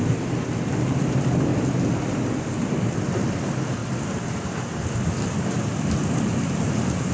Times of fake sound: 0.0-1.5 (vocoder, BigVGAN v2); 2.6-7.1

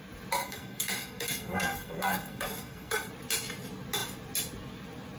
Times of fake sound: 0.4-3.1 (codec, SNAC)

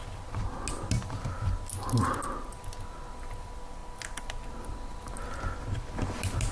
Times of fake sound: none

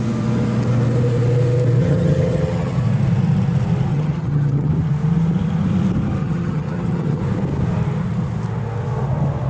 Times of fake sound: 1.8-2.8 (vocoder, HiFi-GAN); 3.9-4.7; 6.2-7.2

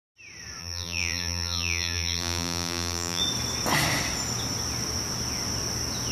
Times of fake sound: 0.6-3.2 (vocoder, BigVGAN v2)

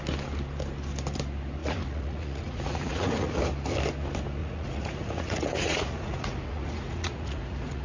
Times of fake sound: 1.6-3.4 (vocoder, Vocos); 4.4-7.8